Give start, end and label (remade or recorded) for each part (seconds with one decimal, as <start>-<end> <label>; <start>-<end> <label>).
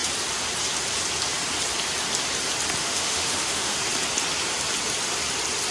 0.0-2.8 recorded; 2.8-3.8 remade; 3.8-5.7 recorded